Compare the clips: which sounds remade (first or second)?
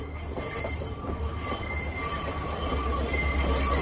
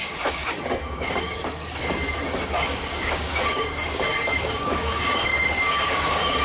second